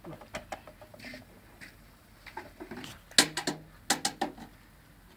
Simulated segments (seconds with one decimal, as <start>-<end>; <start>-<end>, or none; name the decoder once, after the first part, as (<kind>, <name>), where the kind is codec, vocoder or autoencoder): 0.9-2.8 (vocoder, BigVGAN v2)